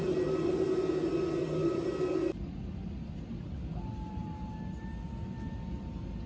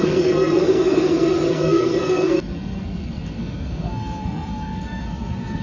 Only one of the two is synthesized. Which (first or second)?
second